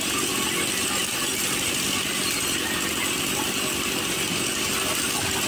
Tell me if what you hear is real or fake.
real